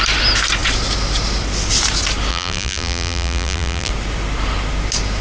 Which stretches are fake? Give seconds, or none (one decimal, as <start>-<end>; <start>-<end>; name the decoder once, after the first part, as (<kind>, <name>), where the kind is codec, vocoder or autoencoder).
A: 2.3-3.9 (vocoder, BigVGAN v2)